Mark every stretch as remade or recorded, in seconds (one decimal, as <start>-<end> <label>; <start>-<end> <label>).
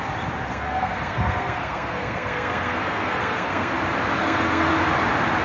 0.0-0.5 recorded; 0.5-3.7 remade; 3.7-4.2 recorded; 4.2-4.7 remade; 4.7-5.4 recorded